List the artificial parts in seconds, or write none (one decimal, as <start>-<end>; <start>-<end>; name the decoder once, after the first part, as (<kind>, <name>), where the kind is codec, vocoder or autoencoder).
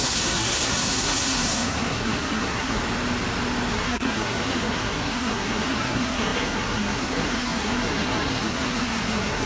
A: 0.0-2.8 (codec, SNAC); 3.7-9.5